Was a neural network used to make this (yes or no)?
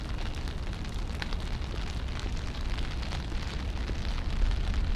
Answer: no